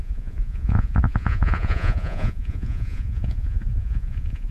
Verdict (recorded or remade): remade